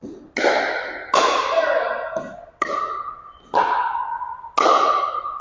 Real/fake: real